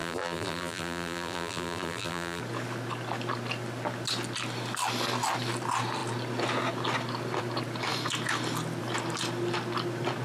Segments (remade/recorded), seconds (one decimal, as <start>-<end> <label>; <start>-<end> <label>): 0.0-2.4 remade; 2.4-10.2 recorded